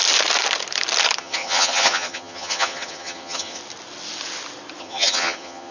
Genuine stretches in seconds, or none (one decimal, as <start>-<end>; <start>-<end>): 0.0-1.2; 3.6-4.8

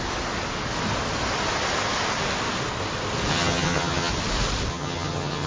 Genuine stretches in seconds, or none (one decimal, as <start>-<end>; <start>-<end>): 0.0-3.3; 4.1-4.7

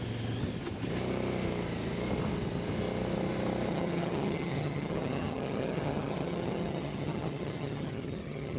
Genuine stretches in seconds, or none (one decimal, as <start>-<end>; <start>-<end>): 0.0-3.7

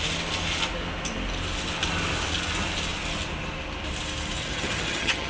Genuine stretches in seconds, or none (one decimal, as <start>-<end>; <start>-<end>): 0.0-4.4

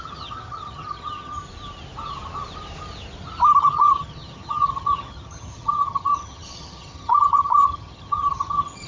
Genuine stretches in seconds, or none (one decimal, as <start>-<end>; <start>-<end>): 1.4-3.6

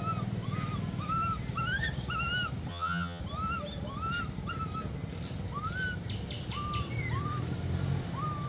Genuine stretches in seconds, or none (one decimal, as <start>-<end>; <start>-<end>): 0.0-2.7; 3.2-8.5